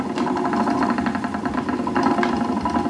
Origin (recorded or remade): recorded